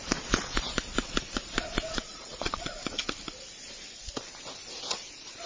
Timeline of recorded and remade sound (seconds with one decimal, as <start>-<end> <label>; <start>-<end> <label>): 0.0-3.0 remade; 3.0-4.9 recorded; 4.9-5.5 remade